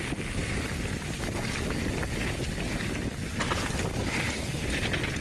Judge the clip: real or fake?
real